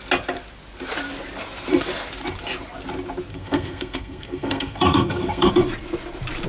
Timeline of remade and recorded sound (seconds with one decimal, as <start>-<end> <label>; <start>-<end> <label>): 0.0-3.3 recorded; 3.3-5.5 remade; 5.5-6.5 recorded

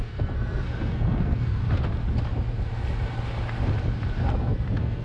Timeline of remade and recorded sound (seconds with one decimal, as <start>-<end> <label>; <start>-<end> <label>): 0.0-1.6 remade; 1.6-4.3 recorded; 4.3-5.0 remade

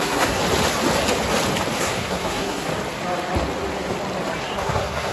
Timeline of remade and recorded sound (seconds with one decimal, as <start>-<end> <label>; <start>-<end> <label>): 0.0-0.4 remade; 0.4-1.8 recorded; 1.8-2.7 remade; 2.7-4.4 recorded; 4.4-5.1 remade

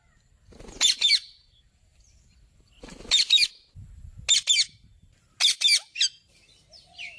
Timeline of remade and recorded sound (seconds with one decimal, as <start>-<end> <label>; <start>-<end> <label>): 0.0-7.2 recorded

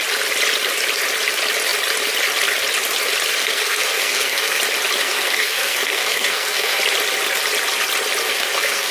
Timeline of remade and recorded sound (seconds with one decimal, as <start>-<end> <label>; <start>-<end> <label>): 0.0-3.4 recorded; 3.4-4.6 remade; 4.6-5.0 recorded; 5.0-6.8 remade; 6.8-8.2 recorded; 8.2-8.9 remade